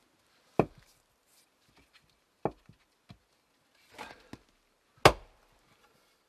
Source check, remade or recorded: recorded